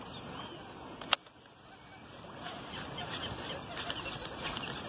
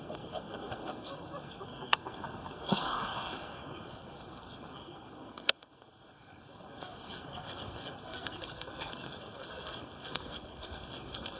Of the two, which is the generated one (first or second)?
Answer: second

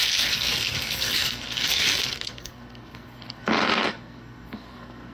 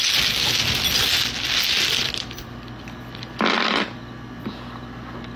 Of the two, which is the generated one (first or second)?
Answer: first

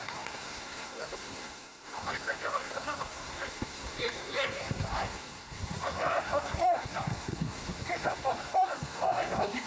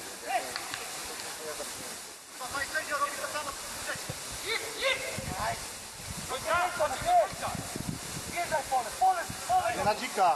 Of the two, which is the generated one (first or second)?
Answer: first